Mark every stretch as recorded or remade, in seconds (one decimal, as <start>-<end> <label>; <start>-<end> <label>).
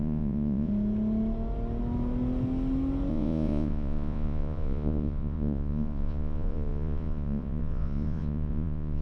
0.0-0.7 remade; 0.7-3.1 recorded; 3.1-9.0 remade